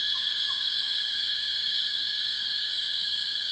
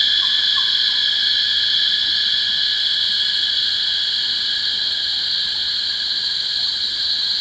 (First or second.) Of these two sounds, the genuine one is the second